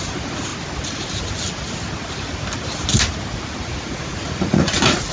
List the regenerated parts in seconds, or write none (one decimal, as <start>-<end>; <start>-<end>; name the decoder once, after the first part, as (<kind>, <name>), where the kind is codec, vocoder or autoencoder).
0.0-0.5 (vocoder, Vocos); 3.6-5.1